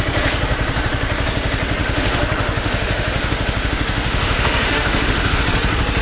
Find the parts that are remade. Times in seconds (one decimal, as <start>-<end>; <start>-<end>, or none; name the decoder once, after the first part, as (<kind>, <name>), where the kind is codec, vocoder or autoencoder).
1.8-5.4 (autoencoder, DAC-VAE)